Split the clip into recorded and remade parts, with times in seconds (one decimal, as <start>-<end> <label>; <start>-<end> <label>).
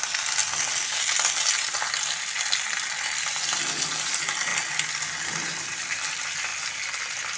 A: 0.0-4.5 recorded; 4.5-6.0 remade; 6.0-6.5 recorded; 6.5-7.0 remade; 7.0-7.4 recorded